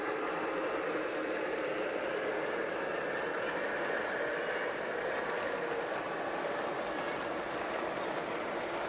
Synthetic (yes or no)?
yes